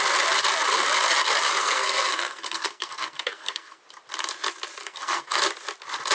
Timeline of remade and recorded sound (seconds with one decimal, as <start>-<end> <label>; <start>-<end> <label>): 0.0-1.6 recorded; 1.6-3.8 remade; 3.8-4.8 recorded; 4.8-5.4 remade; 5.4-6.1 recorded